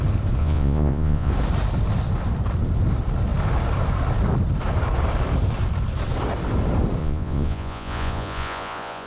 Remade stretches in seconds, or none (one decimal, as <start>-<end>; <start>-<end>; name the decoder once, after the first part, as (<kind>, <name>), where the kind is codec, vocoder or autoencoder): 0.4-1.3 (vocoder, Vocos); 7.0-9.1